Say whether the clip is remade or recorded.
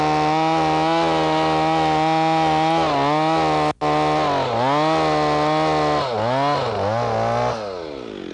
recorded